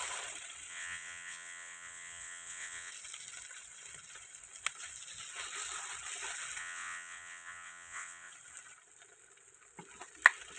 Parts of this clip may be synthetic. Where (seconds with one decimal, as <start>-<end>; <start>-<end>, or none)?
0.7-2.9; 6.6-8.3